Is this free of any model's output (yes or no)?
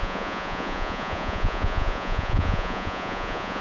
no